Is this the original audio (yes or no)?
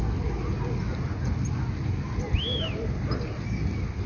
yes